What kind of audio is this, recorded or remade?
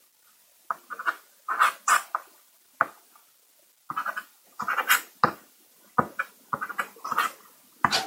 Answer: recorded